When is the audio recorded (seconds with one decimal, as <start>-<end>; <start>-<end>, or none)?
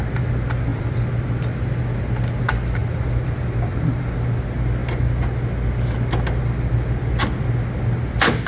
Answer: 0.0-8.5